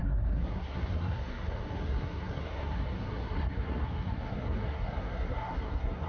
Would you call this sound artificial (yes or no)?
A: yes